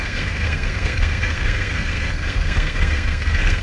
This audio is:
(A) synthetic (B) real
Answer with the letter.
A